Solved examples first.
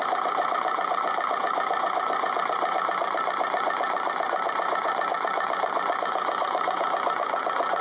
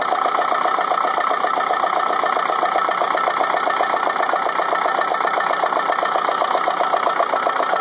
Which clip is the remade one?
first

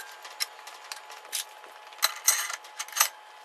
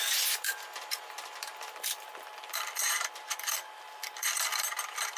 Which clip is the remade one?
second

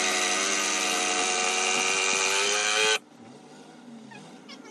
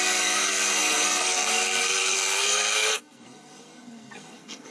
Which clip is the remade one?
second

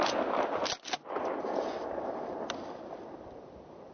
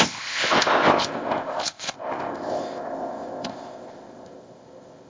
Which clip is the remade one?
second